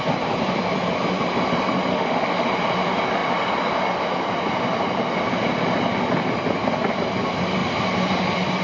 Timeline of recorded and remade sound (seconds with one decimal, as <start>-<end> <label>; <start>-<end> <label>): 0.0-1.9 recorded; 1.9-2.5 remade; 2.5-8.6 recorded